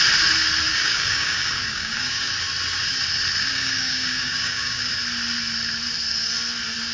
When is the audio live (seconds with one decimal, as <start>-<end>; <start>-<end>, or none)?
0.0-0.7; 2.3-3.5; 4.9-6.9